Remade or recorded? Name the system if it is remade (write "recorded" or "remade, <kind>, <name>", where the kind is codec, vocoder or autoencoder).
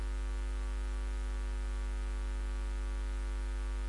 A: recorded